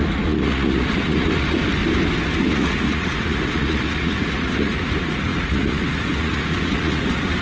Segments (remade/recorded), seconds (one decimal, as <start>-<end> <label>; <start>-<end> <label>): 0.0-1.8 remade; 1.8-2.5 recorded; 2.5-7.4 remade

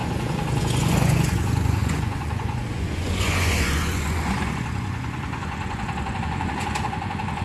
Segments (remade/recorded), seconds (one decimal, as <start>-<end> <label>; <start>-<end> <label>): 0.0-7.4 remade

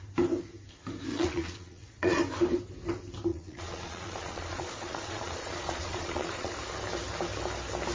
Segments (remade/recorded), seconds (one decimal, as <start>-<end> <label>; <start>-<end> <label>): 0.0-1.1 recorded; 1.1-2.2 remade; 2.2-3.3 recorded; 3.3-6.5 remade; 6.5-7.9 recorded

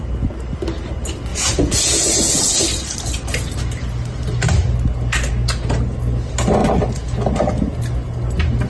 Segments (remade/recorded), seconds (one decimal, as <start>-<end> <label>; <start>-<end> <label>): 0.0-1.3 recorded; 1.3-2.5 remade; 2.5-8.7 recorded

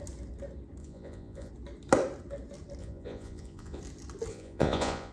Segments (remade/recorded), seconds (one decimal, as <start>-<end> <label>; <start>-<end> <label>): 0.0-0.8 recorded; 0.8-1.5 remade; 1.5-2.8 recorded; 2.8-3.8 remade; 3.8-4.3 recorded; 4.3-5.1 remade

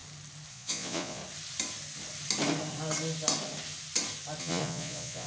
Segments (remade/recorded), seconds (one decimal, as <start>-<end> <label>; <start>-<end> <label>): 0.0-0.5 recorded; 0.5-1.2 remade; 1.2-4.4 recorded; 4.4-5.3 remade

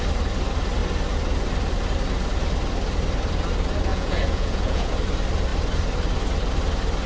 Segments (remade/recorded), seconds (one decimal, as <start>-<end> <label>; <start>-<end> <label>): 0.0-3.9 recorded; 3.9-4.9 remade; 4.9-7.1 recorded

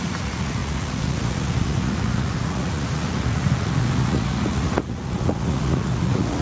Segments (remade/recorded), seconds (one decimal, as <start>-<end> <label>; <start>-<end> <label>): 0.0-6.4 remade